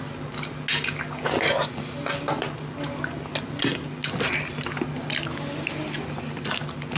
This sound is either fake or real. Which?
real